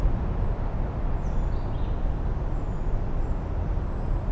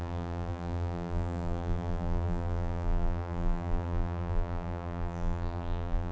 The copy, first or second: second